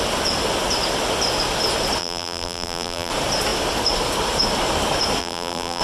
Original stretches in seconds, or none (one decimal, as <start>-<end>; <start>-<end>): 0.0-2.0; 3.1-5.2